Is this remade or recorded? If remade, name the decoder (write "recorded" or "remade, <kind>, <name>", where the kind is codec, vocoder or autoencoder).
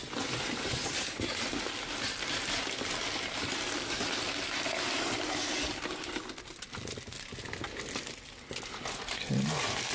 recorded